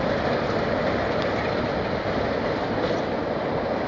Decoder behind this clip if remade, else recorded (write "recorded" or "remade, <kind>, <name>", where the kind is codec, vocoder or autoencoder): recorded